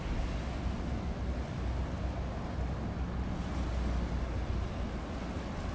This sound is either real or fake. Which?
real